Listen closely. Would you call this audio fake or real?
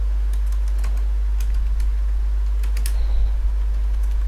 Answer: real